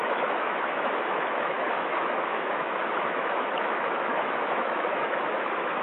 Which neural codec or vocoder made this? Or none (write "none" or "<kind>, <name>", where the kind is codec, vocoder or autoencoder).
autoencoder, DAC-VAE